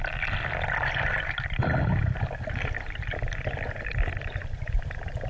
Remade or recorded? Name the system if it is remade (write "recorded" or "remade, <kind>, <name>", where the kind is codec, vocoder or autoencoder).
recorded